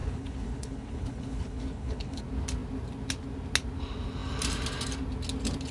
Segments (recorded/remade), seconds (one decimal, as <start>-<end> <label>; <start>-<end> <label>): 0.0-2.2 remade; 2.2-5.7 recorded